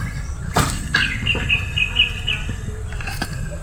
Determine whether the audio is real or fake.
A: real